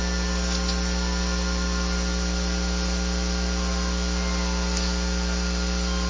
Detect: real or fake real